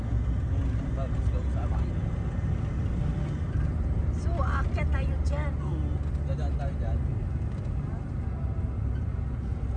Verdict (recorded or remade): recorded